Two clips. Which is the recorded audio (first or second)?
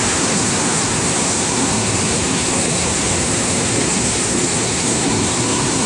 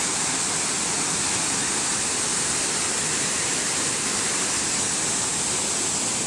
second